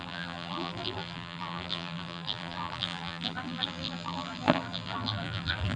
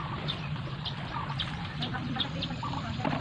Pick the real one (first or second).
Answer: second